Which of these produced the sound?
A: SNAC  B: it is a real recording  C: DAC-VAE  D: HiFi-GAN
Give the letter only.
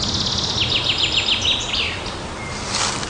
B